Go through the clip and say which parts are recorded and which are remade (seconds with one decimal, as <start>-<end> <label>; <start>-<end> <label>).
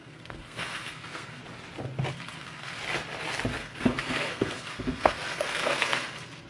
0.0-1.4 remade; 1.4-2.1 recorded; 2.1-2.8 remade; 2.8-3.6 recorded; 3.6-6.5 remade